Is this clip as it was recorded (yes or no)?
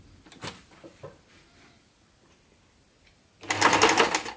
yes